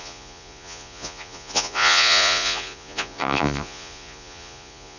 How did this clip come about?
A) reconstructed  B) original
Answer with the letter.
A